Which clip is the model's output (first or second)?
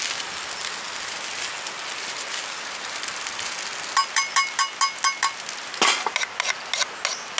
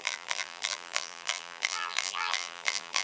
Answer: second